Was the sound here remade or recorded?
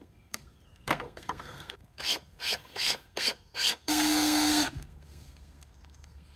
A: remade